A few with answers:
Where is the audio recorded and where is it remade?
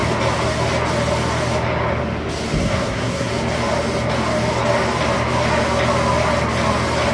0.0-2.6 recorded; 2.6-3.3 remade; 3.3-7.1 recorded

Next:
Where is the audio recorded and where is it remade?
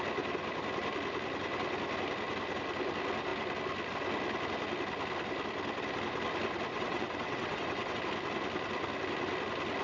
0.0-6.7 recorded; 6.7-8.0 remade; 8.0-9.8 recorded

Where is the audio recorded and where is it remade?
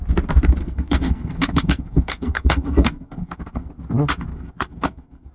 0.0-0.6 recorded; 0.6-3.7 remade; 3.7-4.3 recorded; 4.3-5.3 remade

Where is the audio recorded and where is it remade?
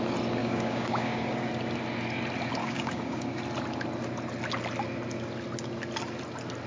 0.0-0.4 recorded; 0.4-1.5 remade; 1.5-2.6 recorded; 2.6-3.4 remade; 3.4-6.7 recorded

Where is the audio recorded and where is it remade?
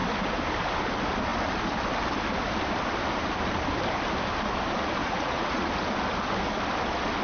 0.0-5.0 recorded; 5.0-5.7 remade; 5.7-7.2 recorded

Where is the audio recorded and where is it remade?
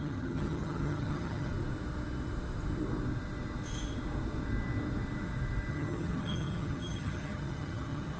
0.0-1.5 remade; 1.5-5.7 recorded; 5.7-8.2 remade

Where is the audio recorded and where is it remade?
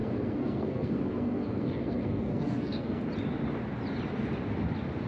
0.0-3.0 remade; 3.0-5.1 recorded